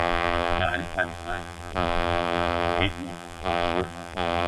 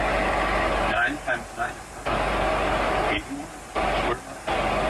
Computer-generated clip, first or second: first